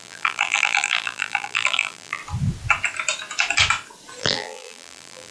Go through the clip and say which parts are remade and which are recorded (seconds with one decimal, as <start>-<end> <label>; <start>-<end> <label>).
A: 0.0-2.2 remade; 2.2-4.2 recorded; 4.2-5.3 remade